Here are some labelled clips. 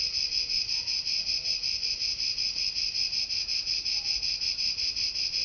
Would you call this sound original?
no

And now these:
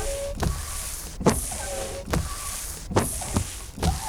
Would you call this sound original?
yes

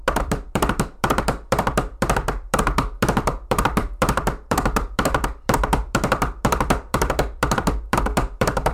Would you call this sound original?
no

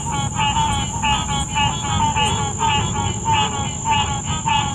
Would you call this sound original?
yes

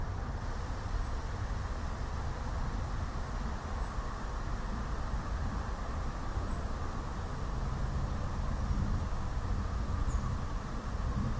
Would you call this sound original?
yes